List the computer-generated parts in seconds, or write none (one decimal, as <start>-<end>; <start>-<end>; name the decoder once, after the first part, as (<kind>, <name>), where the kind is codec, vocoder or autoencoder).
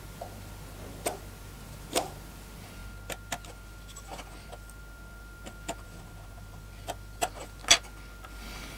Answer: 6.4-7.3 (vocoder, BigVGAN v2)